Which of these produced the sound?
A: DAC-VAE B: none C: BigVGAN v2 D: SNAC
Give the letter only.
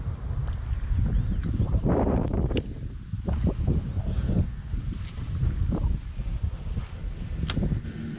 B